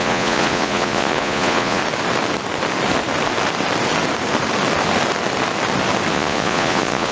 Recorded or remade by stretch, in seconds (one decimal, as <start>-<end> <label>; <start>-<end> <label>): 0.0-1.8 remade; 1.8-6.1 recorded; 6.1-7.1 remade